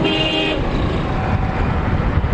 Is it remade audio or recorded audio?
recorded